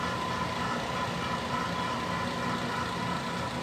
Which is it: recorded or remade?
recorded